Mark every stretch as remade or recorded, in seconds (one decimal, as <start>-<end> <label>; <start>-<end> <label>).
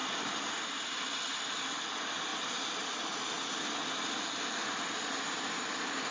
0.0-6.1 recorded